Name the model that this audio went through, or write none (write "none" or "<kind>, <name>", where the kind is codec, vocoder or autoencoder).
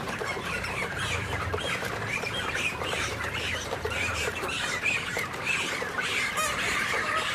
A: vocoder, BigVGAN v2